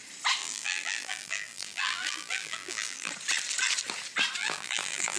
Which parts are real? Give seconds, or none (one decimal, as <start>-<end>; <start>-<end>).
0.0-0.4; 3.1-4.4